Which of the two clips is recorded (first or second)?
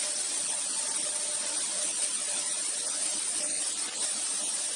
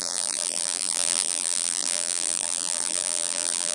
first